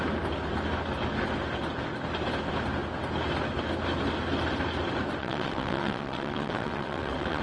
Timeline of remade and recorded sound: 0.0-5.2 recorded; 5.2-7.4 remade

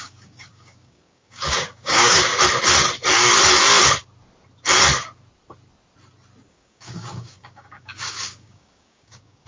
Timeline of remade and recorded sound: 0.0-2.3 remade; 2.3-6.5 recorded; 6.5-9.5 remade

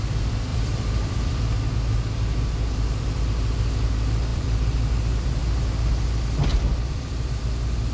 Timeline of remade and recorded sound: 0.0-0.5 recorded; 0.5-1.4 remade; 1.4-4.3 recorded; 4.3-5.4 remade; 5.4-6.5 recorded; 6.5-7.4 remade; 7.4-7.9 recorded

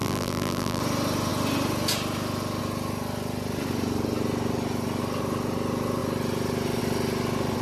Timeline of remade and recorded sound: 0.0-0.8 remade; 0.8-7.6 recorded

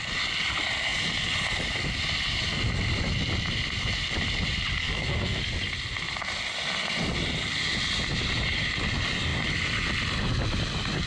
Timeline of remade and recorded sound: 0.0-4.8 recorded; 4.8-5.4 remade; 5.4-11.1 recorded

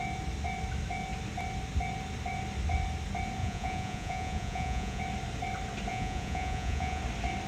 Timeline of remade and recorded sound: 0.0-3.4 recorded; 3.4-5.0 remade; 5.0-5.9 recorded; 5.9-7.0 remade; 7.0-7.5 recorded

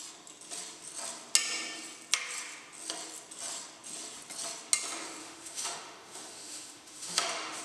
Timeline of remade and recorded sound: 0.0-5.2 recorded; 5.2-7.6 remade

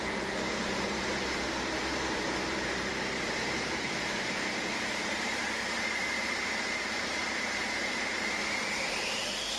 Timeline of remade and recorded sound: 0.0-7.2 remade; 7.2-8.1 recorded; 8.1-9.6 remade